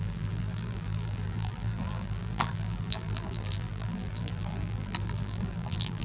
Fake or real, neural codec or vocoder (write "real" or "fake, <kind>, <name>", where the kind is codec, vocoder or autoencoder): fake, vocoder, BigVGAN v2